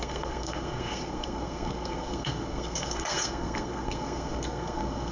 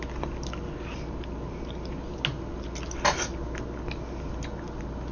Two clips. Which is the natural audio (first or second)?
second